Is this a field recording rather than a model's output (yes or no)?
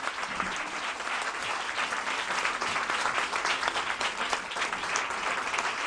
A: yes